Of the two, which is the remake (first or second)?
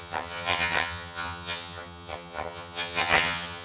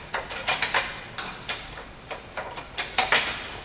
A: first